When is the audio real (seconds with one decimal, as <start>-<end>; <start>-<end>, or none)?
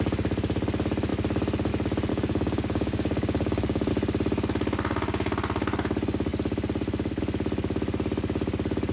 0.0-2.1; 3.9-8.9